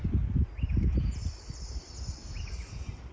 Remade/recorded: recorded